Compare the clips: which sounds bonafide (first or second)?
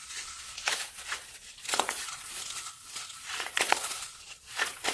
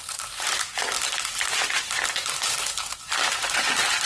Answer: second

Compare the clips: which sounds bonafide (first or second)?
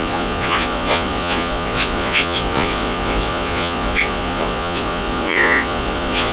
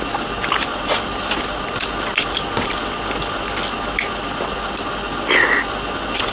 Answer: second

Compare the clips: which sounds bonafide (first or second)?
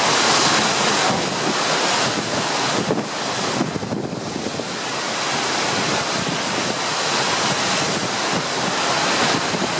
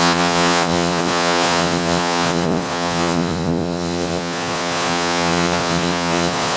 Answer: first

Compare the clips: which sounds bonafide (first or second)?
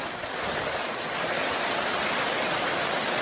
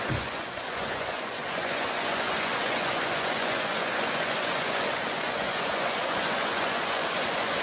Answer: first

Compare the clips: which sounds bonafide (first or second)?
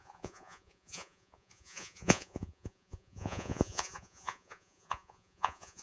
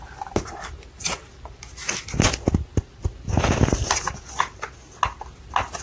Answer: second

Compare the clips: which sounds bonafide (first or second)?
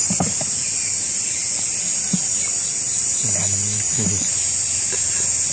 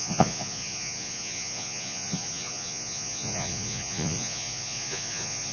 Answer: first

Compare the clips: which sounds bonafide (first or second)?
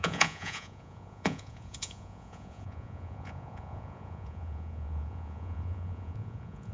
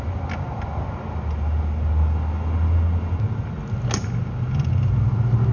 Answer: second